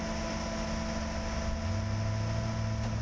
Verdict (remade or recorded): recorded